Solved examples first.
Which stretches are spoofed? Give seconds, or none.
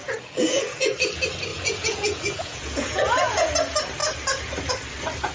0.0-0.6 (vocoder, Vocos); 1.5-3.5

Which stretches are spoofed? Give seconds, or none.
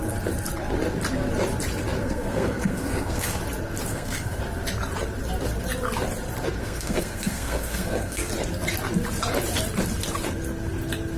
2.0-3.4 (codec, SNAC); 3.9-4.4; 6.6-8.3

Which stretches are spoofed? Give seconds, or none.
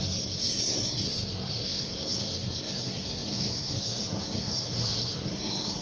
0.0-5.8 (codec, SNAC)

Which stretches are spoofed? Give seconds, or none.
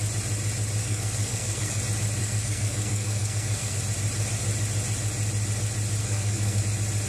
0.8-1.8 (codec, SNAC); 2.2-3.8; 6.0-6.6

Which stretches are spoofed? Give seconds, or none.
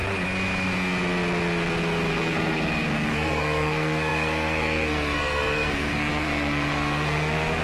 2.1-7.6 (codec, SNAC)